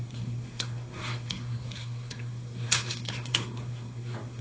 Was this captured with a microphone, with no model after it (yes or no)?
no